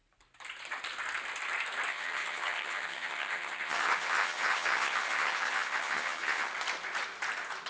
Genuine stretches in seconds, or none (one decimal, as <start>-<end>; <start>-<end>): 0.0-1.9; 6.5-7.7